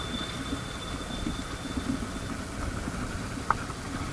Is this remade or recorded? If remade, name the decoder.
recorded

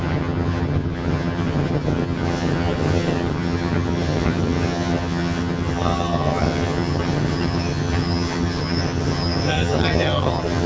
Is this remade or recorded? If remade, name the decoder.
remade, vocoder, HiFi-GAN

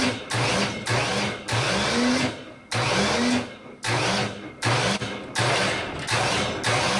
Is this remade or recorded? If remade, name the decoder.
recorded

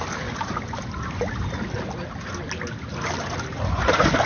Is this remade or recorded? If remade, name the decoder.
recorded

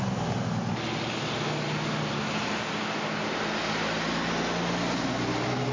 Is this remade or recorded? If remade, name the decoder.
recorded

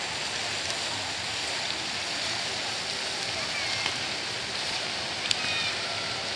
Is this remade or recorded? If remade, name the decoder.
recorded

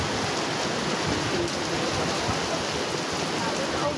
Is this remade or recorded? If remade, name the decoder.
recorded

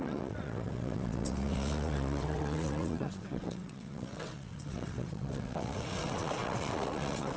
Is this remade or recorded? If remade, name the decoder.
remade, vocoder, WaveNeXt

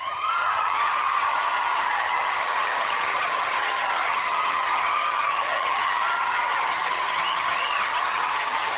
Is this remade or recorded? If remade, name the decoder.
remade, vocoder, HiFi-GAN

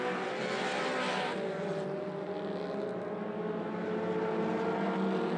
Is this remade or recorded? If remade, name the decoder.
recorded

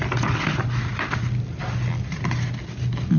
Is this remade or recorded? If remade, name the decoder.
recorded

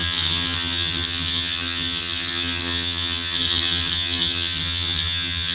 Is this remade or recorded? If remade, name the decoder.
remade, vocoder, HiFi-GAN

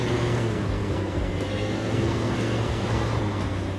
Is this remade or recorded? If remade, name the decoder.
remade, codec, SNAC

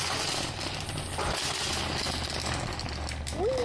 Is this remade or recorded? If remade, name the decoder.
recorded